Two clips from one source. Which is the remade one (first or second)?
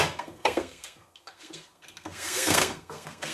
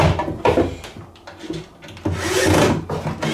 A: first